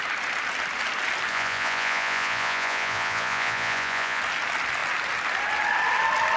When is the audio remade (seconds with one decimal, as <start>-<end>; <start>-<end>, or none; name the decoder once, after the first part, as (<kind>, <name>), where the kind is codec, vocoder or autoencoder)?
1.3-4.2 (vocoder, Vocos)